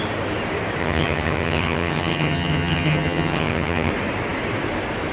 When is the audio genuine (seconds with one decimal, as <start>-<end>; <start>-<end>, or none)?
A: 0.0-0.8; 3.9-5.1